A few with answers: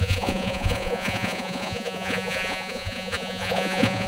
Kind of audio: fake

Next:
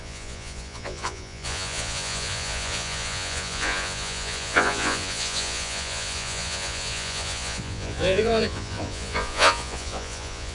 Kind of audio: fake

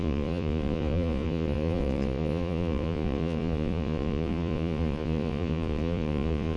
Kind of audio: fake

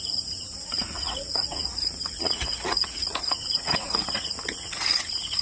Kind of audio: fake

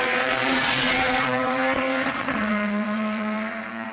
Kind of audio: fake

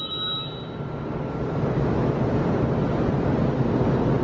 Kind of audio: real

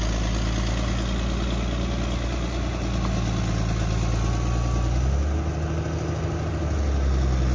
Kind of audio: real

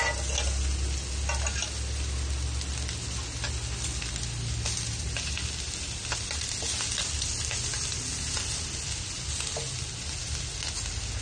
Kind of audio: real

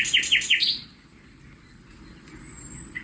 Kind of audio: real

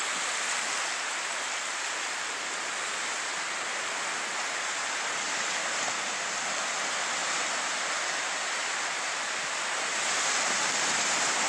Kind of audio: real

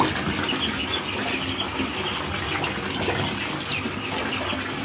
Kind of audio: real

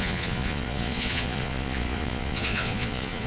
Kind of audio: fake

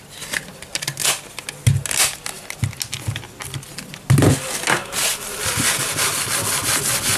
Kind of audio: real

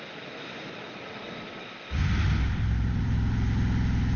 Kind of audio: real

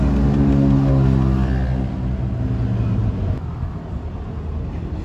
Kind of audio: real